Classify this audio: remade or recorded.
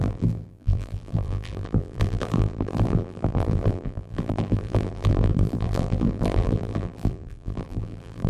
remade